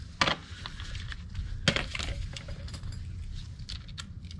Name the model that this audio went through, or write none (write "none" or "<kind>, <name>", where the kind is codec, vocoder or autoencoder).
none